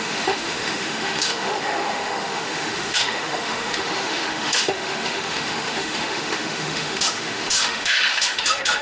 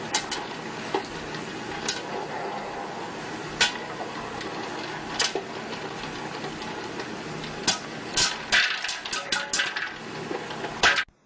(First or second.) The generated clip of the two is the first